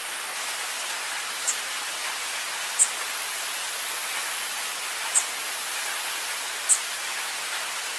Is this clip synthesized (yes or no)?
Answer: no